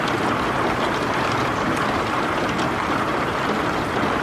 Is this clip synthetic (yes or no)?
no